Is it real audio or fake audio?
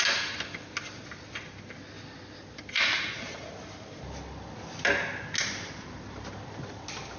real